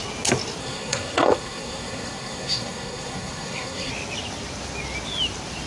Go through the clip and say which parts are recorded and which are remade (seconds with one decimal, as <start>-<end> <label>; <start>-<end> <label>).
0.0-0.6 recorded; 0.6-3.9 remade; 3.9-5.7 recorded